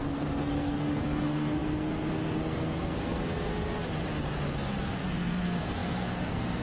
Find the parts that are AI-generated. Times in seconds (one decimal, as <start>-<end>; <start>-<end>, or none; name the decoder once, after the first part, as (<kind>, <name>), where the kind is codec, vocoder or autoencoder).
0.0-3.5 (codec, SNAC); 4.8-6.6